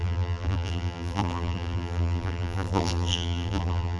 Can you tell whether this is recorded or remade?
remade